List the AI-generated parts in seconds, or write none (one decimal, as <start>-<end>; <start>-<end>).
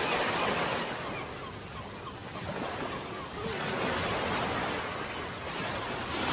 none